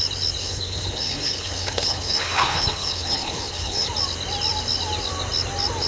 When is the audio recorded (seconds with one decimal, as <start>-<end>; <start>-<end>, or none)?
0.0-0.4; 3.9-5.9